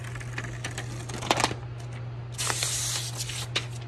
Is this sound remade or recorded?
recorded